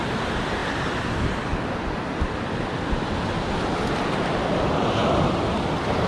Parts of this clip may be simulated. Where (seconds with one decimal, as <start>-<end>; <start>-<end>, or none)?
none